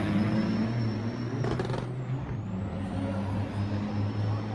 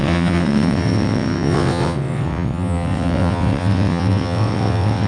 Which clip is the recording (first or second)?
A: first